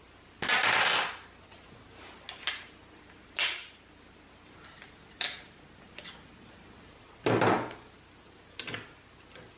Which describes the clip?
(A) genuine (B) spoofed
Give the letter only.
A